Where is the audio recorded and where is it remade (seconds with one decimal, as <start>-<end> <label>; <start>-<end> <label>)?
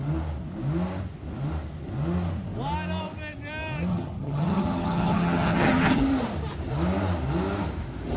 0.0-3.9 recorded; 3.9-6.0 remade; 6.0-8.2 recorded